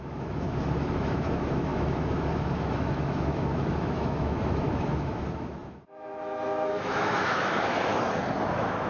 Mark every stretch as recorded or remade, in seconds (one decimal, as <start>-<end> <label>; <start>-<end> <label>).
0.0-7.9 remade; 7.9-8.5 recorded; 8.5-8.9 remade